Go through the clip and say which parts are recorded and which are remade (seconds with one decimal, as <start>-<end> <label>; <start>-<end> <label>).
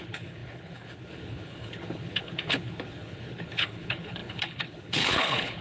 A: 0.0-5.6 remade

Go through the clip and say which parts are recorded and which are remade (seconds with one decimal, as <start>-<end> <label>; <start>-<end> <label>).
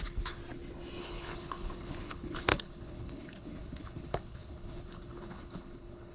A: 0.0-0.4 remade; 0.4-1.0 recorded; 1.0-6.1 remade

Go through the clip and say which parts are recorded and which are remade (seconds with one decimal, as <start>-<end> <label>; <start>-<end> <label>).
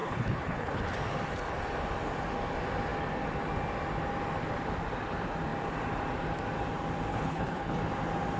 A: 0.0-0.8 remade; 0.8-7.1 recorded; 7.1-7.8 remade; 7.8-8.4 recorded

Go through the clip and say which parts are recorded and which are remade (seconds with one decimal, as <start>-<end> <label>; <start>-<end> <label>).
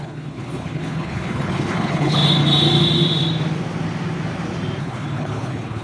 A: 0.0-2.2 remade; 2.2-4.8 recorded; 4.8-5.8 remade